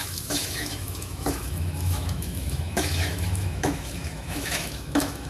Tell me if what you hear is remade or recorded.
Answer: remade